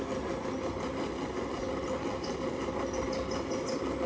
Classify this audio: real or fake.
real